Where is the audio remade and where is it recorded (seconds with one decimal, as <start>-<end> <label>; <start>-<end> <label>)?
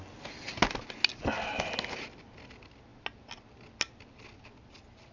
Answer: 0.0-5.1 recorded